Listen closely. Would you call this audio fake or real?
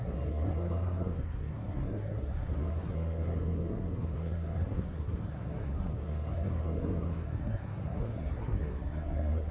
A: fake